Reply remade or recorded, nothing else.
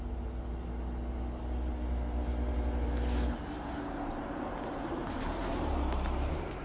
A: recorded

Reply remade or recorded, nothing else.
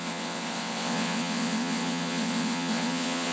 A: remade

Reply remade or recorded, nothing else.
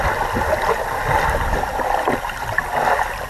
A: recorded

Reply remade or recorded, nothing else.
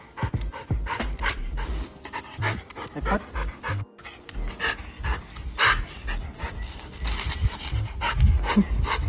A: recorded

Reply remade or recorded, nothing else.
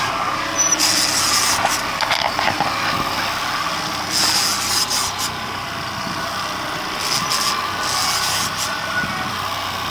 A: recorded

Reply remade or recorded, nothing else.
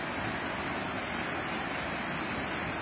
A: recorded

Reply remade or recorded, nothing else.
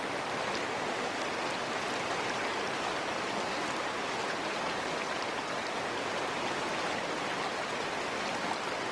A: recorded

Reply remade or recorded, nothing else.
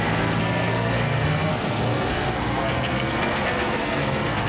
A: remade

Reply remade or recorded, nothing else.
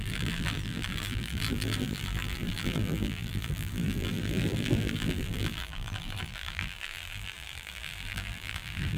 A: remade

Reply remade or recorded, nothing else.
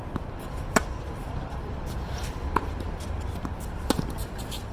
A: remade